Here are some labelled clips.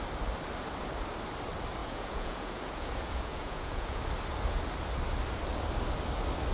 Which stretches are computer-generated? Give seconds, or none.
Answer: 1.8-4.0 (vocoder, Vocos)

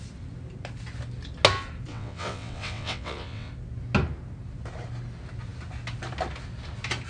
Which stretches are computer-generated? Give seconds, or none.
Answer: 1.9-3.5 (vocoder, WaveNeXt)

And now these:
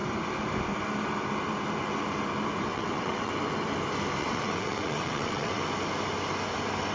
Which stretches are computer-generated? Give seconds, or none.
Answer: 2.7-3.3 (vocoder, WaveNeXt); 4.2-5.6

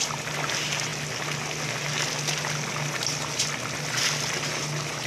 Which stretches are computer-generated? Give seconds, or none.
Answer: none

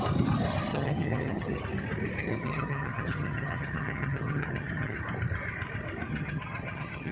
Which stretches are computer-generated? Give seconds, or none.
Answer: 0.7-1.6 (vocoder, HiFi-GAN); 2.2-5.0; 6.1-7.1